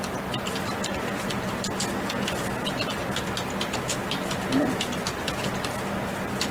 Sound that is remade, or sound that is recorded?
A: recorded